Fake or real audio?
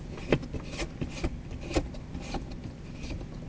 real